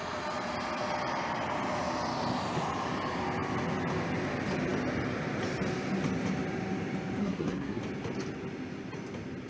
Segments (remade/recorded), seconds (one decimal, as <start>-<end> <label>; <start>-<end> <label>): 0.0-7.2 recorded; 7.2-7.8 remade; 7.8-9.5 recorded